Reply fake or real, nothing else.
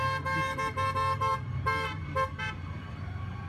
fake